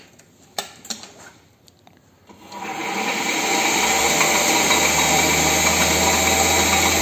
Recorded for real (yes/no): yes